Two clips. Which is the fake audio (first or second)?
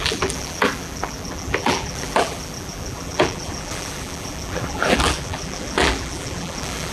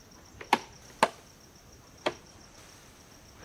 first